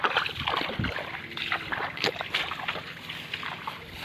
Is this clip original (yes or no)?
yes